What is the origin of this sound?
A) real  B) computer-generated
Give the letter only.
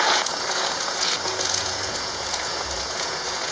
B